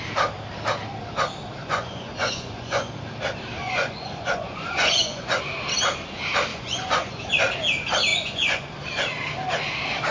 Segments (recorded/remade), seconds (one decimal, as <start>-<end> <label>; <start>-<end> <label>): 0.0-1.6 recorded; 1.6-2.9 remade; 2.9-3.6 recorded; 3.6-5.4 remade; 5.4-6.5 recorded; 6.5-7.3 remade; 7.3-8.1 recorded; 8.1-8.7 remade; 8.7-10.1 recorded